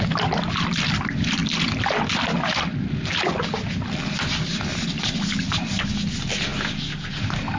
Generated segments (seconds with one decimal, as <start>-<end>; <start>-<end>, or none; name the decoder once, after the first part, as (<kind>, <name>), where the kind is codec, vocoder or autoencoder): none